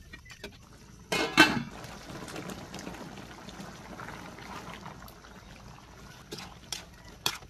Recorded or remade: recorded